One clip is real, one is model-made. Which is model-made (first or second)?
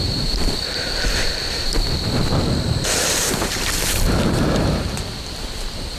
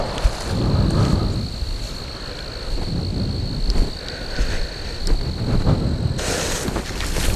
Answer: first